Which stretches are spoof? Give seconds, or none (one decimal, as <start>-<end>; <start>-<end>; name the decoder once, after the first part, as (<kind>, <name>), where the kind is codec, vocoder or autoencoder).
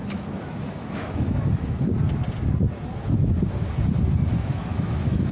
0.0-1.9 (autoencoder, DAC-VAE); 4.3-5.3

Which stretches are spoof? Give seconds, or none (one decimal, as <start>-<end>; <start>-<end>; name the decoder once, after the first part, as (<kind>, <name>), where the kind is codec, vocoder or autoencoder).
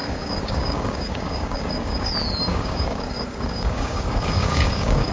0.0-2.1 (codec, DAC); 2.5-5.1